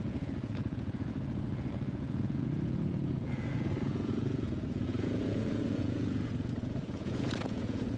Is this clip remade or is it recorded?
remade